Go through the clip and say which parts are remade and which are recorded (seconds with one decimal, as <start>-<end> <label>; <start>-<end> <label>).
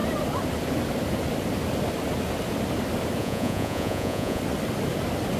0.0-3.2 recorded; 3.2-4.4 remade; 4.4-5.4 recorded